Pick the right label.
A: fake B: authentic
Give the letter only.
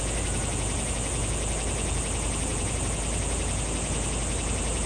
B